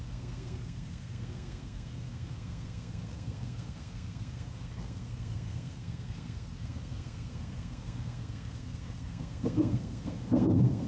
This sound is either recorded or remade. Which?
remade